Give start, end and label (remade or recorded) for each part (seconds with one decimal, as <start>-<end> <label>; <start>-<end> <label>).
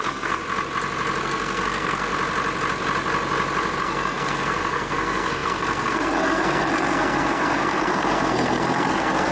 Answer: 0.0-0.4 remade; 0.4-1.2 recorded; 1.2-2.1 remade; 2.1-3.8 recorded; 3.8-9.3 remade